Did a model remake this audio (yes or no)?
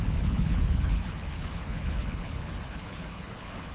yes